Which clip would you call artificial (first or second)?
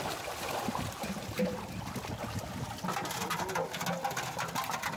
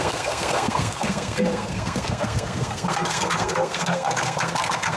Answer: second